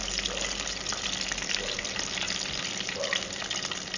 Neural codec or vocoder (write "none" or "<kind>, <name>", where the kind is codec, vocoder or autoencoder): none